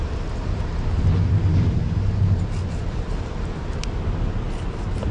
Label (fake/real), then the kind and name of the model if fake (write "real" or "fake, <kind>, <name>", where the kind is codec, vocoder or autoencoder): real